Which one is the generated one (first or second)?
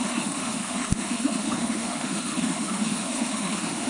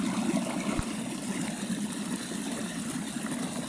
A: first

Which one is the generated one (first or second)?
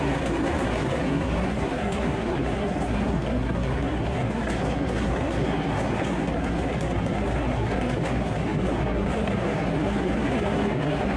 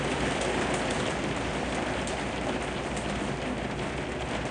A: first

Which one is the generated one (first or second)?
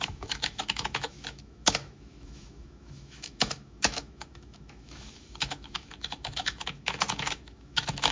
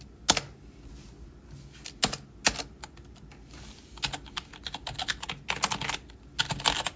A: first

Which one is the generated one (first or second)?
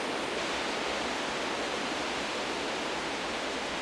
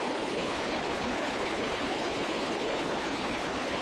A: second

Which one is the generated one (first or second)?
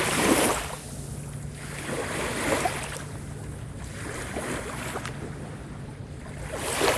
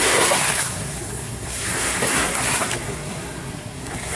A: second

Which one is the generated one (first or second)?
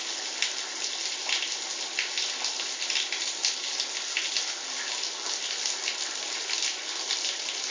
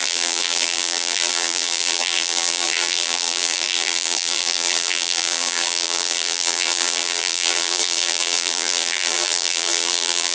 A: second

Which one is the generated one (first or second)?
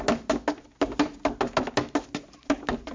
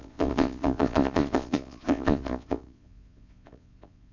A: second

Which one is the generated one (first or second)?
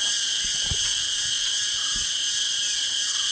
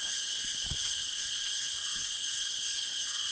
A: second